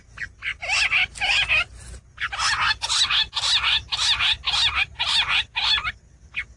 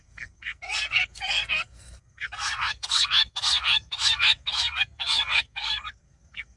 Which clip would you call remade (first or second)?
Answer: second